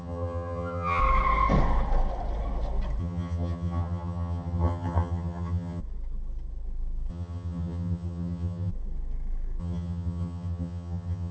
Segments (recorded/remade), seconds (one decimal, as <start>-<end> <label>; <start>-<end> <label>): 0.0-1.0 remade; 1.0-3.0 recorded; 3.0-5.8 remade; 5.8-7.1 recorded; 7.1-8.7 remade; 8.7-9.6 recorded; 9.6-11.3 remade